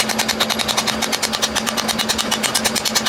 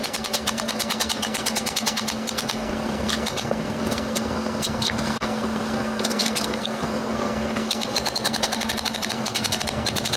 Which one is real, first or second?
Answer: first